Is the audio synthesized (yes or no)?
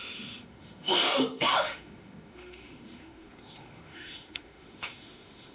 yes